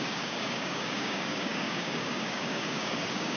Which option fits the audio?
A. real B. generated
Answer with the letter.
B